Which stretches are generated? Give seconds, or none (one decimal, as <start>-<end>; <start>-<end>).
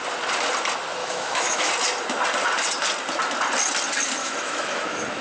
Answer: 1.0-1.7; 4.2-5.2